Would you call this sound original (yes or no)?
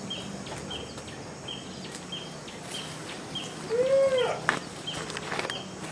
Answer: yes